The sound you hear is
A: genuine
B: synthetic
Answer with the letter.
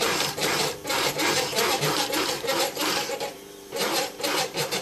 B